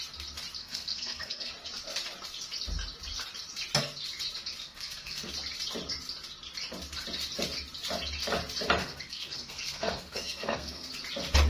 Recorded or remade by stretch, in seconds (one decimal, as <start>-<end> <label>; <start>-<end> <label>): 0.0-0.6 recorded; 0.6-1.5 remade; 1.5-4.6 recorded; 4.6-5.3 remade; 5.3-8.8 recorded; 8.8-10.9 remade; 10.9-11.5 recorded